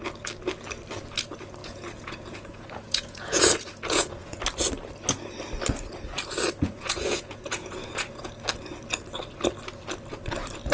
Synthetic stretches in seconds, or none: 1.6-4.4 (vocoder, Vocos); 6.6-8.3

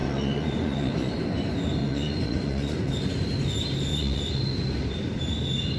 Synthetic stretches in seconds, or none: 0.0-1.1 (vocoder, Vocos); 1.8-2.9; 3.9-4.4

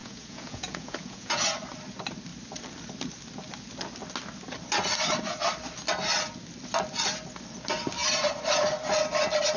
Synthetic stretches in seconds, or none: 0.0-1.4 (vocoder, Vocos)

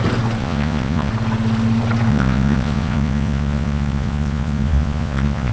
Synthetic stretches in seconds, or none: 0.4-1.1 (vocoder, Vocos); 2.1-5.5

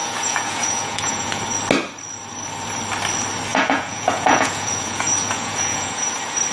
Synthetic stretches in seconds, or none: 0.0-1.4 (vocoder, Vocos); 3.5-6.1

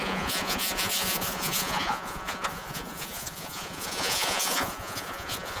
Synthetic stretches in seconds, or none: 0.0-5.6 (vocoder, Vocos)

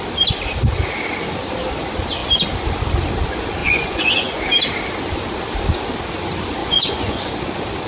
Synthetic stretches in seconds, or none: 3.6-4.4 (vocoder, Vocos); 6.6-7.3